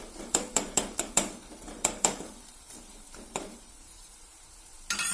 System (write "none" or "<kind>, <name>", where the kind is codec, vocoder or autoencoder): vocoder, BigVGAN v2